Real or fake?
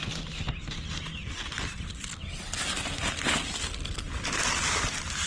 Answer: real